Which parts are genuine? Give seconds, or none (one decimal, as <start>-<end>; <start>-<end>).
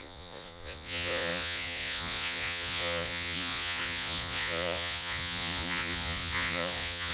none